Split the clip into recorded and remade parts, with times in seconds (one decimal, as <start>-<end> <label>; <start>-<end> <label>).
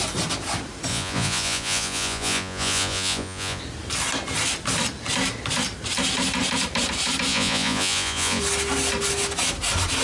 0.0-0.9 recorded; 0.9-3.6 remade; 3.6-7.3 recorded; 7.3-8.4 remade; 8.4-10.0 recorded